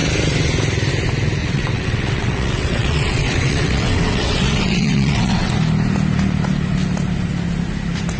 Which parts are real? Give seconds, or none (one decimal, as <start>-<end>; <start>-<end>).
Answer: 0.0-1.4; 5.5-8.2